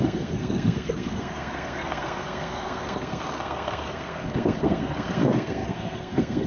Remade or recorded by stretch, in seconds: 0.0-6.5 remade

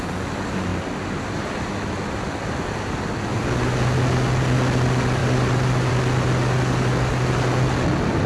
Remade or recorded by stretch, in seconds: 0.0-0.7 recorded; 0.7-2.2 remade; 2.2-5.2 recorded; 5.2-5.9 remade; 5.9-8.3 recorded

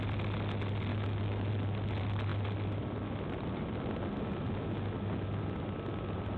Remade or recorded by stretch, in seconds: 0.0-0.9 recorded; 0.9-1.5 remade; 1.5-6.4 recorded

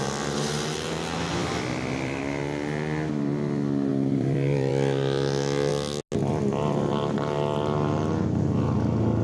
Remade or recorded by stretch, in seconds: 0.0-1.4 recorded; 1.4-2.2 remade; 2.2-3.9 recorded; 3.9-4.7 remade; 4.7-9.2 recorded